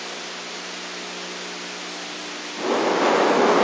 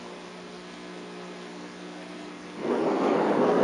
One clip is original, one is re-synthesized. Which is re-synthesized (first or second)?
second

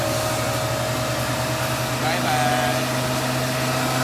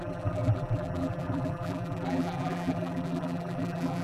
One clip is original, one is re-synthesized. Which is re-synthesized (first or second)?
second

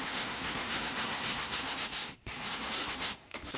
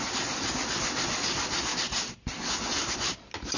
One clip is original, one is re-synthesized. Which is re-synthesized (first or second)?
first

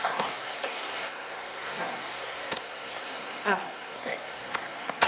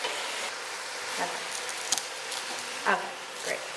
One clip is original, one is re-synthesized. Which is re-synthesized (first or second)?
first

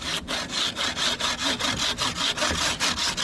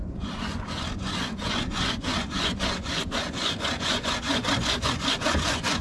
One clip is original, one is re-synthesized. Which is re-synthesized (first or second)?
second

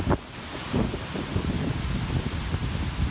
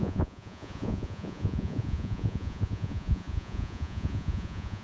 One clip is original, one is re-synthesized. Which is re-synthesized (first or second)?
second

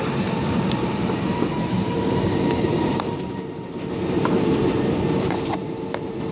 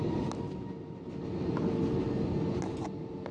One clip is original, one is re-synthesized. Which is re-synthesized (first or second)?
first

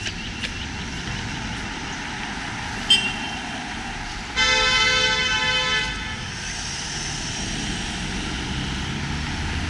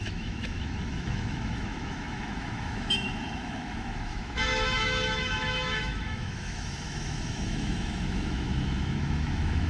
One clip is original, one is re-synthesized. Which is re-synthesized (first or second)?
second